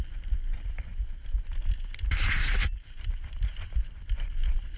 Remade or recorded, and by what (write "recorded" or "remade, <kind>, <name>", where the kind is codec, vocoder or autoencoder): recorded